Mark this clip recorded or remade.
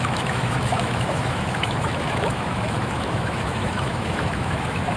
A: remade